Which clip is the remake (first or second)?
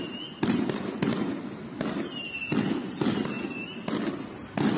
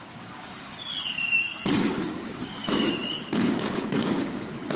second